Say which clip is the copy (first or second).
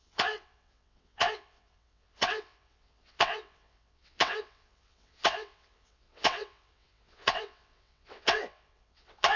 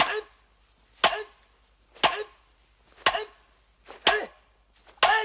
first